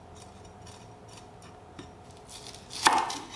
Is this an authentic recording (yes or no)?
yes